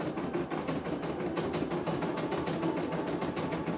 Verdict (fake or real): real